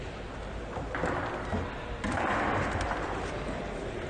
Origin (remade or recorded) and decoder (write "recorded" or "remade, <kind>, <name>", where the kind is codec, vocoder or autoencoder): recorded